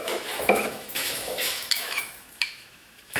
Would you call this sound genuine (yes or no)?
no